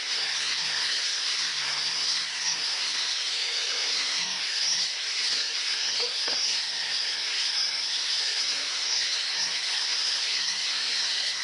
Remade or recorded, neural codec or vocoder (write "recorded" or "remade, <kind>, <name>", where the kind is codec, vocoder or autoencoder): remade, codec, SNAC